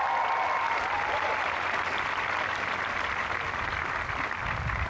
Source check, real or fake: real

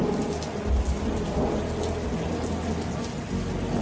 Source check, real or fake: real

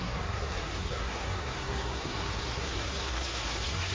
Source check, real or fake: fake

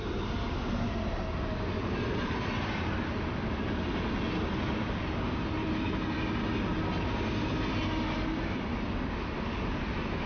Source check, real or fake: real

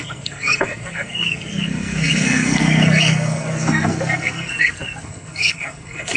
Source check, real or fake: fake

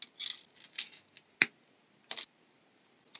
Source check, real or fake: real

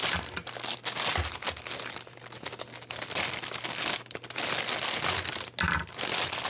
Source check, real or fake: real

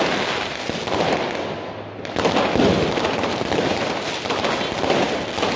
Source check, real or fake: real